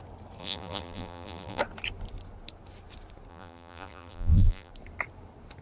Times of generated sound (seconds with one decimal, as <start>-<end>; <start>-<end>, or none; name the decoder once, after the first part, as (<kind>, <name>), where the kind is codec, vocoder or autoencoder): 0.4-1.6 (vocoder, BigVGAN v2); 3.3-4.7